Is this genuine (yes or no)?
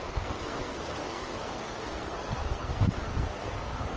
no